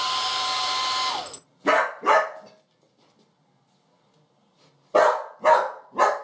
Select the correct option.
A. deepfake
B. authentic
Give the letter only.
B